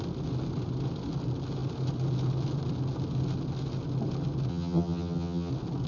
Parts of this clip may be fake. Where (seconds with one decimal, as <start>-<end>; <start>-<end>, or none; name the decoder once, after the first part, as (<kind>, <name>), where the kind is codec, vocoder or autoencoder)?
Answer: 4.5-5.5 (vocoder, HiFi-GAN)